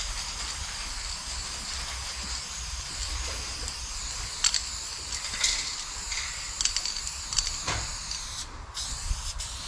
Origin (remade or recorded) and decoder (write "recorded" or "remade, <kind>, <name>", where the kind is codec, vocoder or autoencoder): recorded